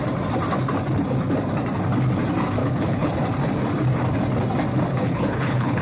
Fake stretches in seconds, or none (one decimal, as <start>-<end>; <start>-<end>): 2.6-3.1; 4.9-5.8

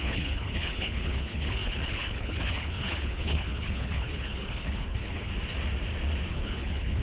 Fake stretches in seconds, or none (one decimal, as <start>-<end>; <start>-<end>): 0.0-5.3; 6.3-7.0

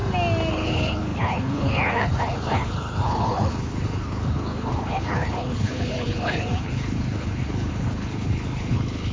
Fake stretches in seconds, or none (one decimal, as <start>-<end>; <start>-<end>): 0.5-9.1

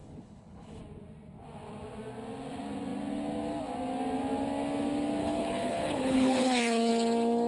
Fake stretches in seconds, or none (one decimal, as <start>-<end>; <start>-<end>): 0.0-0.8; 5.2-6.9

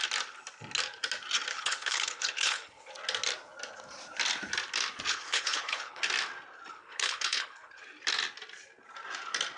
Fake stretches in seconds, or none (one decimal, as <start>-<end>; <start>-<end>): 1.5-2.9; 5.1-6.0; 6.7-7.8

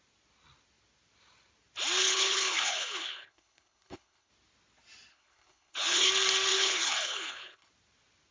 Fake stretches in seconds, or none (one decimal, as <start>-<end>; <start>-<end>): 2.0-4.3; 5.1-6.1; 6.5-7.7

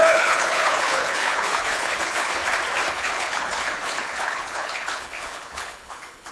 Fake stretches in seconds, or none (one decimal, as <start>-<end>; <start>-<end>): 0.0-2.4; 2.9-6.3

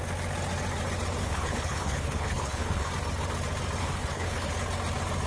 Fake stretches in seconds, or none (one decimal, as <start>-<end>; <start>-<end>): 1.2-2.9; 3.8-4.5